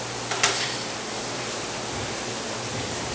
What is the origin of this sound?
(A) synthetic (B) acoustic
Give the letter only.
B